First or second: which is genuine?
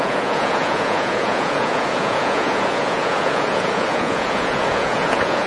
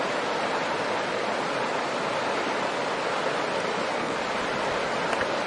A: second